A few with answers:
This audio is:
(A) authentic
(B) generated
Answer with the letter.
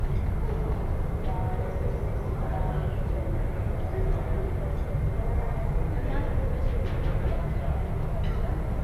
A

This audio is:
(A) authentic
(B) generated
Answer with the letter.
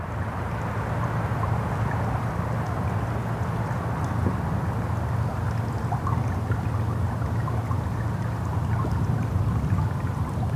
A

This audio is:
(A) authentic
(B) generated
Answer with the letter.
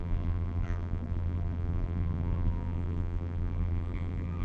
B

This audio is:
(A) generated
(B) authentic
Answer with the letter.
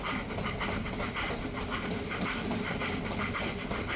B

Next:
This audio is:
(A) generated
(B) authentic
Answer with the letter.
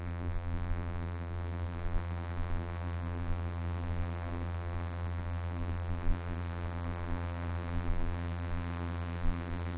A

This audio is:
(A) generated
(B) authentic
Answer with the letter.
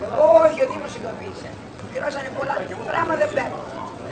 A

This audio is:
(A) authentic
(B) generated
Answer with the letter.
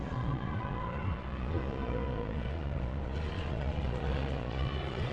B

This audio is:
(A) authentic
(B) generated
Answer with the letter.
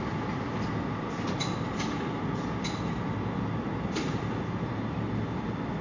A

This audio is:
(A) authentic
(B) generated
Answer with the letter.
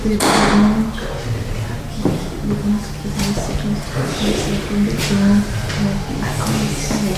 A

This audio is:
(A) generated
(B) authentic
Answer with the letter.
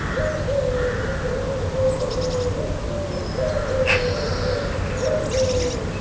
B